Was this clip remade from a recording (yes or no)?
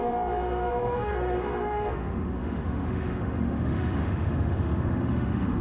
yes